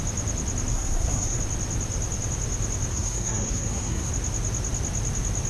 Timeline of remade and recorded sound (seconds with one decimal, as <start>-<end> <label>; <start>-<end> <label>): 0.0-0.7 recorded; 0.7-1.4 remade; 1.4-2.9 recorded; 2.9-4.1 remade; 4.1-5.5 recorded